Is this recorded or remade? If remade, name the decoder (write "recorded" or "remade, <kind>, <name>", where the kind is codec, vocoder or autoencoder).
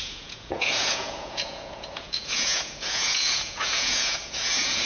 remade, vocoder, Vocos